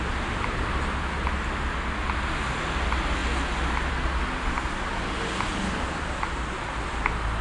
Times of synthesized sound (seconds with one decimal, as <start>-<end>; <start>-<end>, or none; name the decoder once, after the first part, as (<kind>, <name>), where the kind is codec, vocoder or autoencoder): none